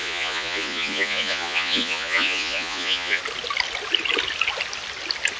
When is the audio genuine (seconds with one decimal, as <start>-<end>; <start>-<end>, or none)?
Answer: 3.2-5.4